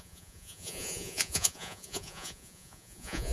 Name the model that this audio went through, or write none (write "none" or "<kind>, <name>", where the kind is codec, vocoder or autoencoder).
vocoder, Vocos